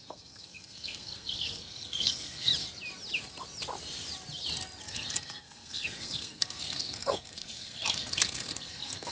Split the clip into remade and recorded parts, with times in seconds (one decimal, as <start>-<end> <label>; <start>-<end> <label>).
0.0-2.5 remade; 2.5-4.9 recorded; 4.9-9.1 remade

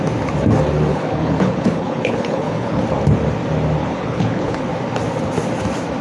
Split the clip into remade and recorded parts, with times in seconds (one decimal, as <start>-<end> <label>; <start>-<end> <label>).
0.0-0.9 recorded; 0.9-2.8 remade; 2.8-3.8 recorded; 3.8-4.6 remade; 4.6-6.0 recorded

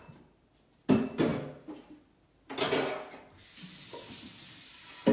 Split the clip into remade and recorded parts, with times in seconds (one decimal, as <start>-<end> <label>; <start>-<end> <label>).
0.0-5.1 recorded

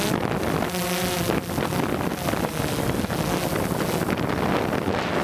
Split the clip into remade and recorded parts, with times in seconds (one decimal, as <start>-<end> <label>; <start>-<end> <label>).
0.0-5.2 recorded

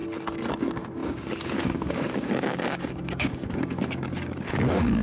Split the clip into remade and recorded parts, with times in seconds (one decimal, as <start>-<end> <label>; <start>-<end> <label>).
0.0-0.5 recorded; 0.5-5.0 remade